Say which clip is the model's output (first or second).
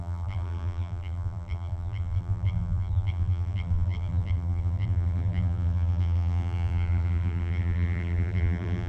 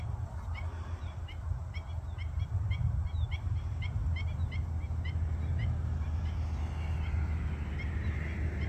first